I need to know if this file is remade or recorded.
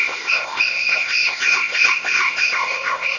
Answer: remade